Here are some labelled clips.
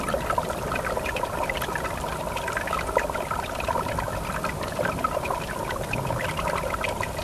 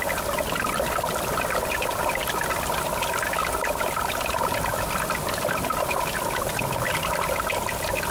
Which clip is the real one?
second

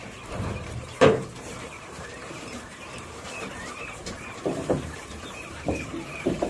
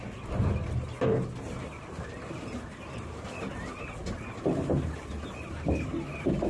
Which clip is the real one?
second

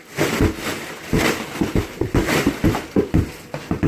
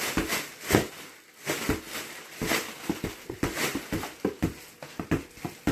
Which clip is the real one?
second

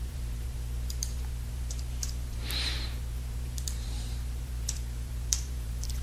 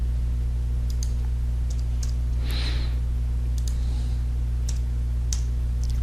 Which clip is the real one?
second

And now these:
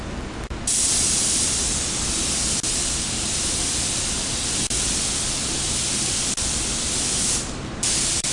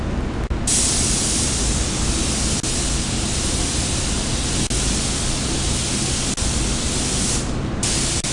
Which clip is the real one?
second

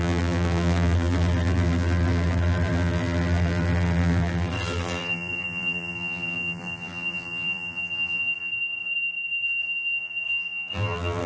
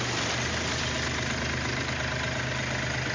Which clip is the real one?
second